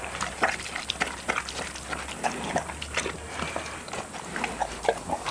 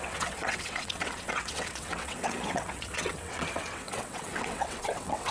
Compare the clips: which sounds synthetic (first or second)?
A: second